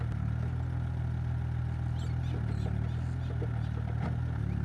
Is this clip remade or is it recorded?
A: recorded